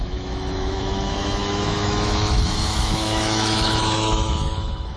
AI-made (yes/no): yes